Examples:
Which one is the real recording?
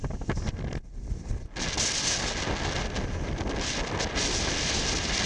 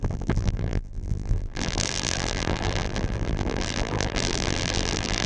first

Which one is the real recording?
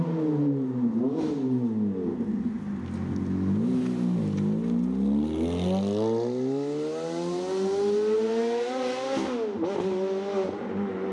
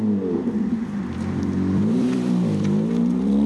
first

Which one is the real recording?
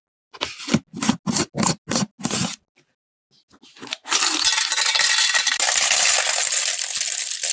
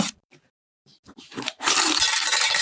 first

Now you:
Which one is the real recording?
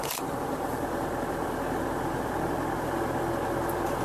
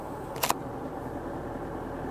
second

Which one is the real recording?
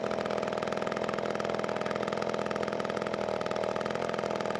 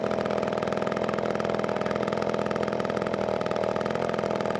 first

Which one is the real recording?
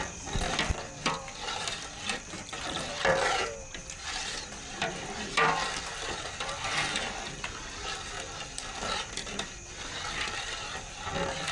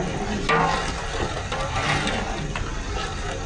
second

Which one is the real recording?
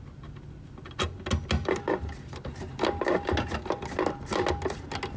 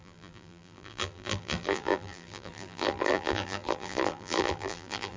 first